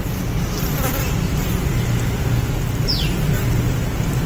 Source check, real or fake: real